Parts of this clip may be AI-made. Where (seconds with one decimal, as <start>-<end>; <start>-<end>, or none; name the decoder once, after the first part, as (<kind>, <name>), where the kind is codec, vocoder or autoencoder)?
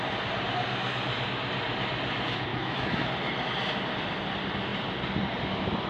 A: 2.5-3.1 (autoencoder, DAC-VAE)